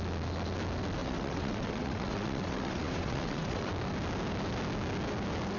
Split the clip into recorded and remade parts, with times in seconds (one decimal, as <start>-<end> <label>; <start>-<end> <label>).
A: 0.0-1.0 recorded; 1.0-3.7 remade; 3.7-5.6 recorded